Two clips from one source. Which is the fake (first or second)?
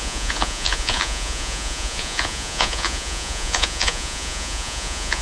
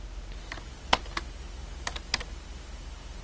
first